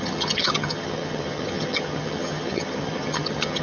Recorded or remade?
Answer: remade